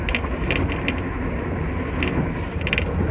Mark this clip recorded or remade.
recorded